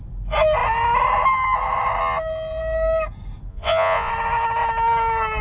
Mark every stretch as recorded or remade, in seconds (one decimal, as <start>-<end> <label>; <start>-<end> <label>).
0.0-3.5 recorded; 3.5-4.1 remade; 4.1-5.4 recorded